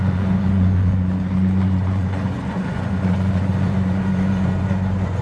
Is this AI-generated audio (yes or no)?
yes